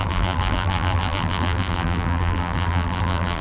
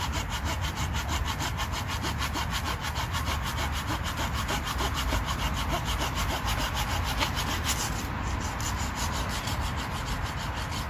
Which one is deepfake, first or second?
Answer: first